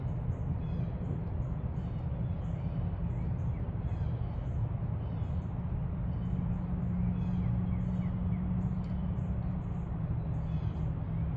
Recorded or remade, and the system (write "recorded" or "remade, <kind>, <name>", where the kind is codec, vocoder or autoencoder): recorded